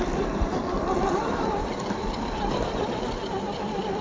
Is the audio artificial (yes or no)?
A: yes